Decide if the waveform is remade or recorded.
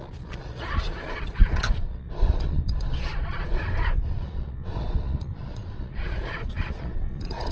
remade